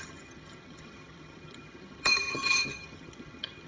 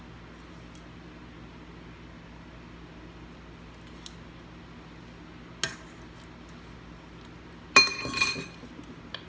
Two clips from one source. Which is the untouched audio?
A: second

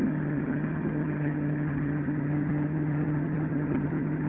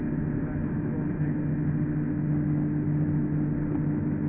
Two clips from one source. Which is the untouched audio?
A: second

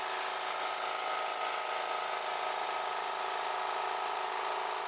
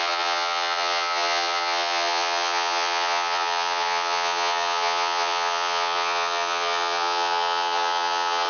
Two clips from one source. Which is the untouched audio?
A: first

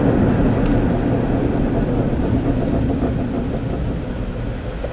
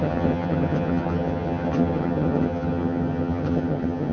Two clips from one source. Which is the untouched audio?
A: first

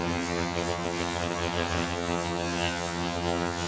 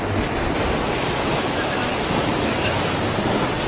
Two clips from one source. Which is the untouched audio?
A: second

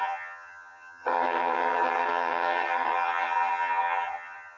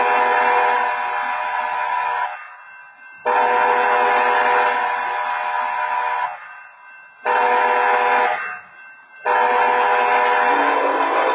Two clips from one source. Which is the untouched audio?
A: second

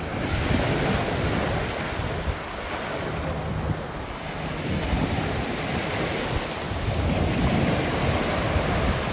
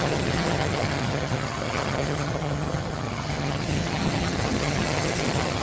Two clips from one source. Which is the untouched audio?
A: first